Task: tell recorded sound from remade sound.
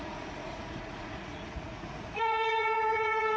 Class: remade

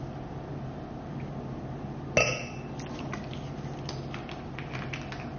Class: recorded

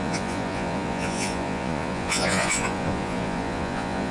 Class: remade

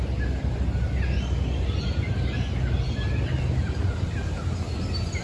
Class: recorded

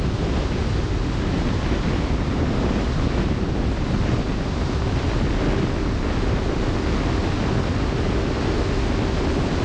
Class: recorded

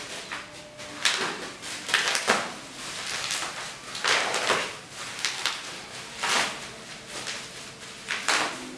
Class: recorded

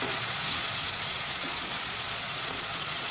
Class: remade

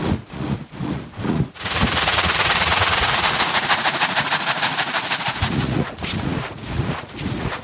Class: remade